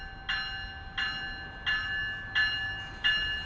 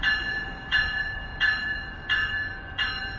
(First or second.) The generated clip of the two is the second